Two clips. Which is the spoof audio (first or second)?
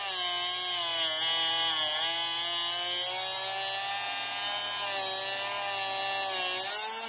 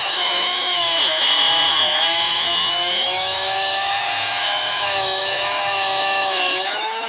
second